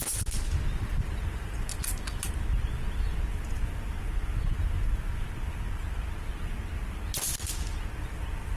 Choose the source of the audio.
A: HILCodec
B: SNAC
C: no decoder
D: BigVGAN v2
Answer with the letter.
C